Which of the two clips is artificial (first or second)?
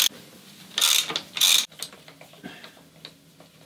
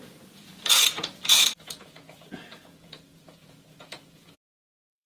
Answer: second